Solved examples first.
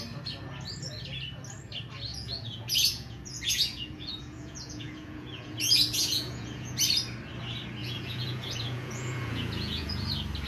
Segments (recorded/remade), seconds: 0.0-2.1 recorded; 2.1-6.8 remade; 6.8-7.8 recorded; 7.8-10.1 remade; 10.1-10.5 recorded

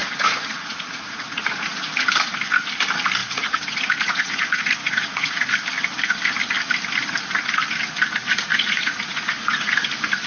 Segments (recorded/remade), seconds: 0.0-1.9 remade; 1.9-3.2 recorded; 3.2-5.5 remade; 5.5-8.5 recorded; 8.5-9.7 remade; 9.7-10.3 recorded